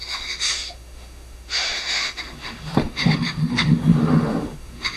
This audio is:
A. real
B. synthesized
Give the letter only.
B